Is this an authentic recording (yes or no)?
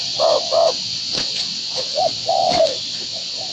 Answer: no